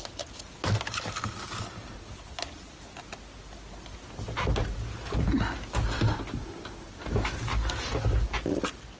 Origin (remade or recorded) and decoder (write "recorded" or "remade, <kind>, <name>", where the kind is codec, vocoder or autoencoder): recorded